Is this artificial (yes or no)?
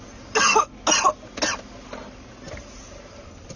no